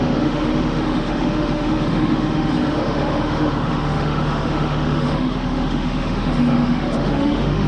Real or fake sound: fake